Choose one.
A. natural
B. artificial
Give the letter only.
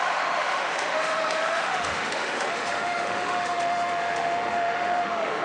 B